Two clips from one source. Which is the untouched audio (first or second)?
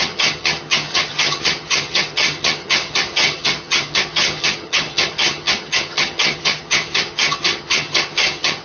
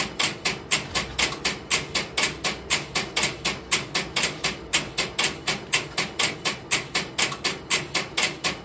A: second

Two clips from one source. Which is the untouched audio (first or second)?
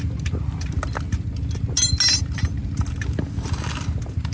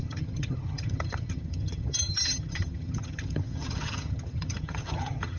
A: first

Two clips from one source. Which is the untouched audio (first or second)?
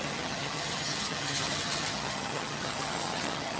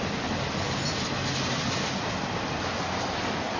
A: second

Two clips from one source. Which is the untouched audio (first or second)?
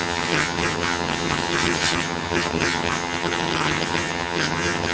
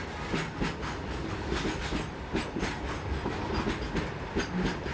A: second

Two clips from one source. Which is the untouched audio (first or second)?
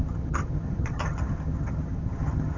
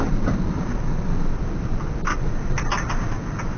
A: second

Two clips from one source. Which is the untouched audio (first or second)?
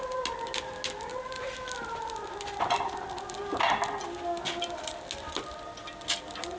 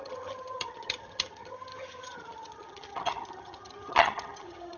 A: first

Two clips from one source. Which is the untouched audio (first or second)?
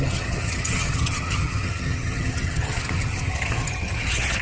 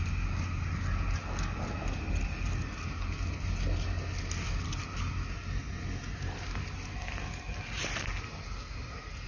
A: second